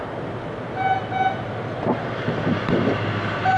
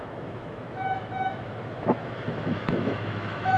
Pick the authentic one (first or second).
first